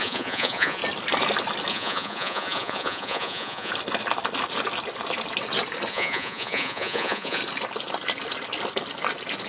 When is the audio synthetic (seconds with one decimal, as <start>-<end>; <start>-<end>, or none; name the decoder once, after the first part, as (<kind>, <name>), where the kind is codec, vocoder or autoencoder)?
0.0-0.8 (vocoder, Vocos); 1.7-3.7; 5.9-7.4